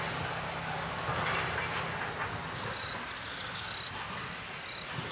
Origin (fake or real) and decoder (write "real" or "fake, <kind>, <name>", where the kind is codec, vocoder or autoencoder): real